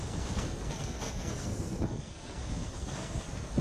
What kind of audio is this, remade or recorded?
remade